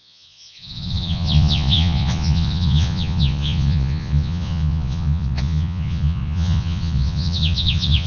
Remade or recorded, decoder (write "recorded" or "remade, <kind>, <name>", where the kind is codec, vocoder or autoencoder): remade, vocoder, Vocos